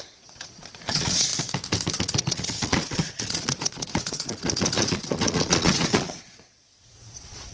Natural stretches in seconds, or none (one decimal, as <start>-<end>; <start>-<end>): 1.3-1.9